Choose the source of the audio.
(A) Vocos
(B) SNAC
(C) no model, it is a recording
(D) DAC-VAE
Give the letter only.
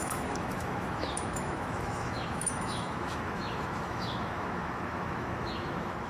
D